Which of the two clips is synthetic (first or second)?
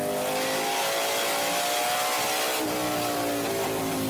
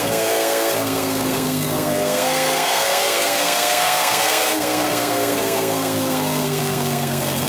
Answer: second